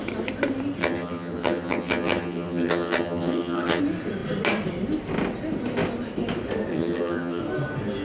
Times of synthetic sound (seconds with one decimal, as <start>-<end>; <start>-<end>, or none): 0.8-3.8; 6.7-7.4